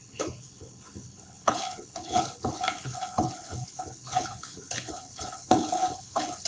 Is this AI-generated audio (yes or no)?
yes